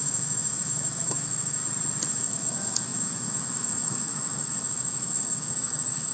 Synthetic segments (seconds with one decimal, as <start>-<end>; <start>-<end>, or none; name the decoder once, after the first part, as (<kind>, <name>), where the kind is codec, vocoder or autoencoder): 0.0-1.6 (autoencoder, DAC-VAE); 2.1-6.1